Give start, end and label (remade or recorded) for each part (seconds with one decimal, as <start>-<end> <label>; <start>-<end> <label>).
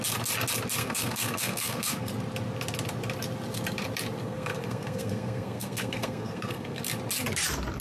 0.0-0.8 recorded; 0.8-2.1 remade; 2.1-4.2 recorded; 4.2-6.8 remade; 6.8-7.8 recorded